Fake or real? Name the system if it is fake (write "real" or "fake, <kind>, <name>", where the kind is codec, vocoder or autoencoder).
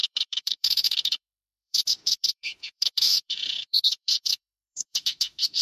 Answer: fake, autoencoder, DAC-VAE